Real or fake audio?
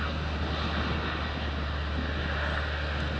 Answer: real